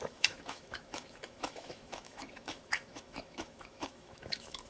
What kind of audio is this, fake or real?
fake